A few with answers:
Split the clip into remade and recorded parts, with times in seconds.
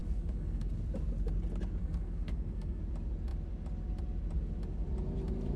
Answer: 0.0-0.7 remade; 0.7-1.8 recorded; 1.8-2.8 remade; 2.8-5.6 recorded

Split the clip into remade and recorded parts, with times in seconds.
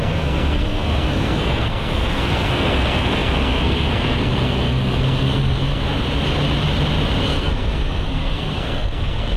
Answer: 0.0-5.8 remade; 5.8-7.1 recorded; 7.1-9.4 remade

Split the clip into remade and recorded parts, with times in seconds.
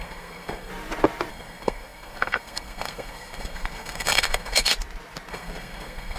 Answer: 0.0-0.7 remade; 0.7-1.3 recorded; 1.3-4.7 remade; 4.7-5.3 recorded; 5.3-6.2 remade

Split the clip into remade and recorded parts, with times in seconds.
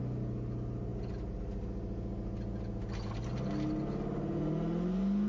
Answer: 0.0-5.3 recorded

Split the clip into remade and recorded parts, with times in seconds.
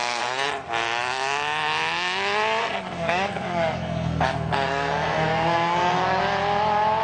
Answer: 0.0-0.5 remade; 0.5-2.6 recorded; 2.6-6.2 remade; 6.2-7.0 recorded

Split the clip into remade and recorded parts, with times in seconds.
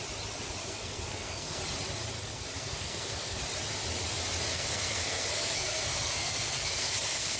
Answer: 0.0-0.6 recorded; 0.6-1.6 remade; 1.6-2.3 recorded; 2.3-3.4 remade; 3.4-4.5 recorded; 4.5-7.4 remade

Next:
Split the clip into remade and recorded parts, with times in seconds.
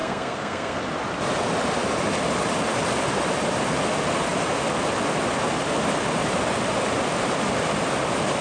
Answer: 0.0-0.8 remade; 0.8-8.4 recorded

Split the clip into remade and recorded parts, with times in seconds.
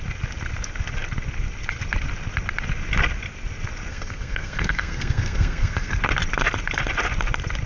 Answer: 0.0-3.9 recorded; 3.9-6.0 remade; 6.0-7.7 recorded